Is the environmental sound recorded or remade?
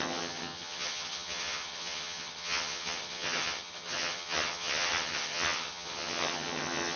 remade